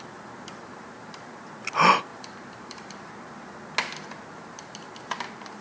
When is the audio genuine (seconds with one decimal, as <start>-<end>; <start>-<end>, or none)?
0.0-2.1; 3.1-5.6